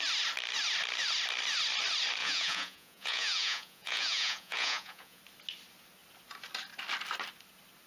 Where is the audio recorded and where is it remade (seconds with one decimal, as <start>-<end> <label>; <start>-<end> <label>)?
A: 0.0-2.2 recorded; 2.2-5.2 remade; 5.2-7.9 recorded